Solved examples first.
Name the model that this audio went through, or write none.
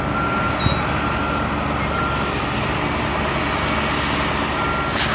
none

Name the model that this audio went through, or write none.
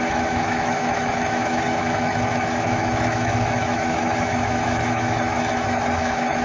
autoencoder, DAC-VAE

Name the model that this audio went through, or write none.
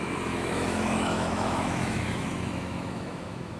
autoencoder, DAC-VAE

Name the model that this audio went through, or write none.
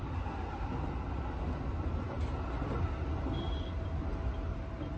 none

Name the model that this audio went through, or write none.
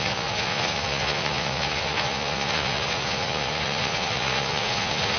vocoder, Vocos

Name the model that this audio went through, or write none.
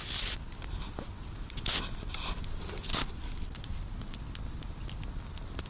none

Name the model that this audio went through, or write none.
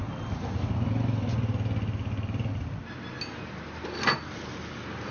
none